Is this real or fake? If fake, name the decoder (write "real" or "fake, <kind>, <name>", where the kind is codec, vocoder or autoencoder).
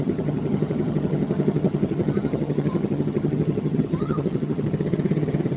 fake, vocoder, HiFi-GAN